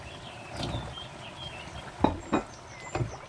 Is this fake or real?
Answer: real